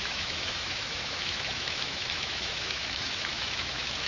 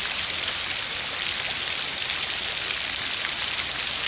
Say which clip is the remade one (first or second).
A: first